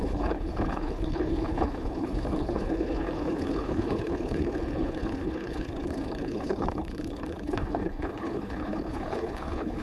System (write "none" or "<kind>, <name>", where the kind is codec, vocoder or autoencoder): codec, HILCodec